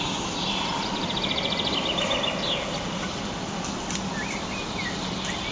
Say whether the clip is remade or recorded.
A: recorded